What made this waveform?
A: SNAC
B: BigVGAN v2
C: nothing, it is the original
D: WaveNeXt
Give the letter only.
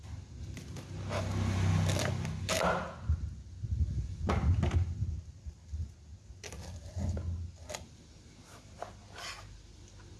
C